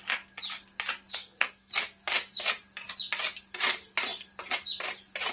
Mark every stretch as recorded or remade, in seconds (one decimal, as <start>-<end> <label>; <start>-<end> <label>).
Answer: 0.0-1.1 recorded; 1.1-1.7 remade; 1.7-5.3 recorded